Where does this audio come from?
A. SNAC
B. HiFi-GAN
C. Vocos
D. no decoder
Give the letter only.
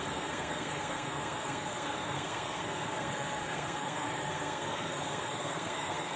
A